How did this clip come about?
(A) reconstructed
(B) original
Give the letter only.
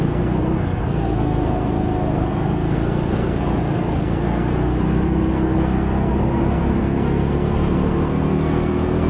A